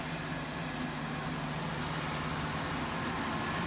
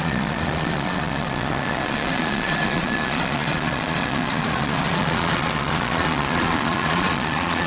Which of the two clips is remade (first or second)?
second